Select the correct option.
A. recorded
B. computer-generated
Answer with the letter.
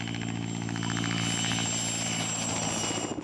A